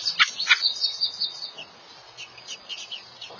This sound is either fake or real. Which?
real